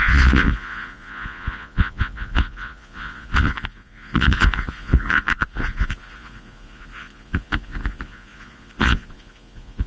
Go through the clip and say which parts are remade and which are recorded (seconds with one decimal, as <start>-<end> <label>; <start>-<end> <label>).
0.0-9.9 remade